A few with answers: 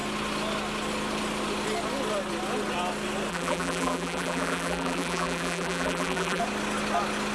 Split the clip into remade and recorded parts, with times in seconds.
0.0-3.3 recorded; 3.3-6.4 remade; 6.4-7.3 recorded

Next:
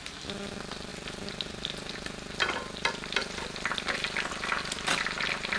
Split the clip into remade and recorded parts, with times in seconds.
0.0-0.9 recorded; 0.9-4.3 remade; 4.3-5.6 recorded

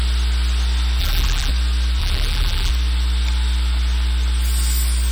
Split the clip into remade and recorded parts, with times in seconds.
0.0-1.0 recorded; 1.0-1.5 remade; 1.5-2.0 recorded; 2.0-2.7 remade; 2.7-5.1 recorded

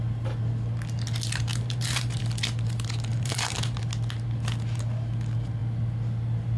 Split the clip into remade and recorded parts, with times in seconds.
0.0-1.5 recorded; 1.5-2.2 remade; 2.2-3.1 recorded; 3.1-3.8 remade; 3.8-6.6 recorded

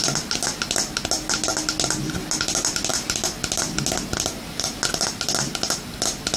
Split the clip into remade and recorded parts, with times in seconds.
0.0-6.4 recorded